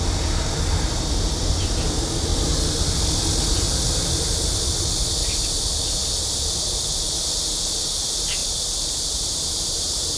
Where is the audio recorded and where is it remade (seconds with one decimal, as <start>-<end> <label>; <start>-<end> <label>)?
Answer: 0.0-8.4 recorded; 8.4-10.2 remade